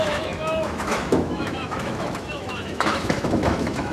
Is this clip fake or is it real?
fake